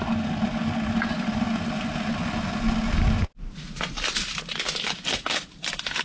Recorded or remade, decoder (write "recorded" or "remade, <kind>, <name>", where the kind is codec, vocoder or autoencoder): recorded